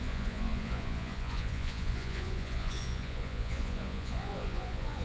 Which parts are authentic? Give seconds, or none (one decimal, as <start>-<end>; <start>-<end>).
none